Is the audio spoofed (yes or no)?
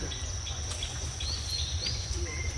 yes